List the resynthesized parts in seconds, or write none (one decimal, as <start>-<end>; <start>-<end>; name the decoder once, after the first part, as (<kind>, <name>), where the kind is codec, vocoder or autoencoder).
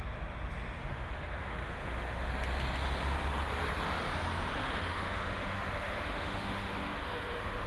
0.8-2.3 (autoencoder, DAC-VAE); 4.6-7.7